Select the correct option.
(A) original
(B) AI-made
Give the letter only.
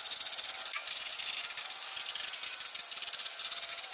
A